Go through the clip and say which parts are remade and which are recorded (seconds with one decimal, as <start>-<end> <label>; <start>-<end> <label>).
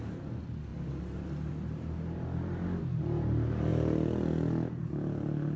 0.0-5.6 recorded